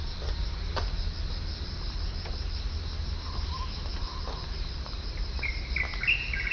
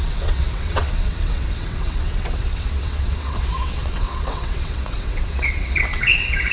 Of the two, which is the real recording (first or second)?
first